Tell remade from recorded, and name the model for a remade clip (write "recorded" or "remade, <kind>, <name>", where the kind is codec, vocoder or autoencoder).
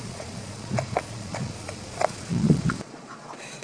remade, vocoder, Vocos